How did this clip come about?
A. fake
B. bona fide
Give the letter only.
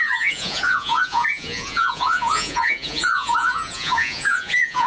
A